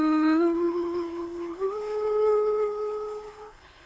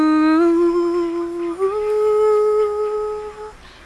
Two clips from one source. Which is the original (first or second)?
second